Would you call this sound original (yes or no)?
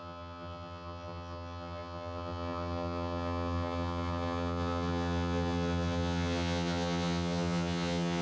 no